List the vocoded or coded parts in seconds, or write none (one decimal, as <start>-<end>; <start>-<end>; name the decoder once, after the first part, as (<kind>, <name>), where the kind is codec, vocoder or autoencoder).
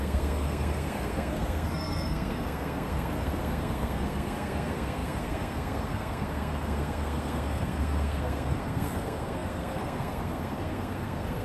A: 0.0-11.4 (codec, SNAC)